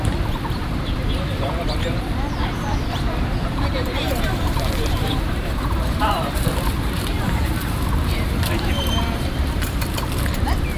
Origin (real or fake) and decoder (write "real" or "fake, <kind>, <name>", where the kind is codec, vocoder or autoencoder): fake, vocoder, BigVGAN v2